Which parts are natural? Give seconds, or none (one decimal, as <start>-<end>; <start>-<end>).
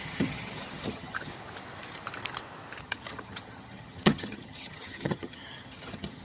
1.3-2.8